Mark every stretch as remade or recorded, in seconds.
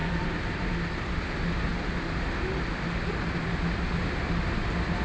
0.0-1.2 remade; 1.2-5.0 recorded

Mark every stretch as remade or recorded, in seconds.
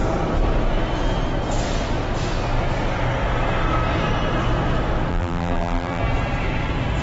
0.0-5.1 recorded; 5.1-6.0 remade; 6.0-7.0 recorded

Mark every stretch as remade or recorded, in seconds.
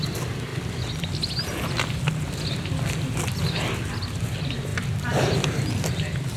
0.0-6.4 recorded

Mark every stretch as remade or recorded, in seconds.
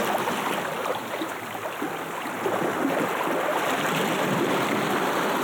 0.0-0.8 recorded; 0.8-1.4 remade; 1.4-5.4 recorded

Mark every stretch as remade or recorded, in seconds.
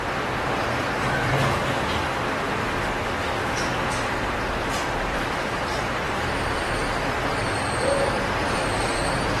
0.0-4.6 recorded; 4.6-9.4 remade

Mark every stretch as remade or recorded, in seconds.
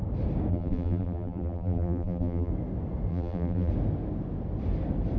0.0-0.5 recorded; 0.5-2.5 remade; 2.5-3.1 recorded; 3.1-3.7 remade; 3.7-5.2 recorded